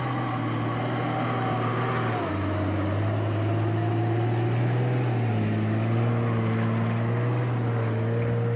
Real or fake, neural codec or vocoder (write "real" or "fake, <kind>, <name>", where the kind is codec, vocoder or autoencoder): real